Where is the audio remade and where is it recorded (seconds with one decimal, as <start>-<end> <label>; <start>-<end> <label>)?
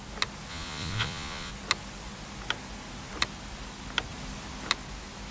0.0-0.5 recorded; 0.5-1.5 remade; 1.5-5.3 recorded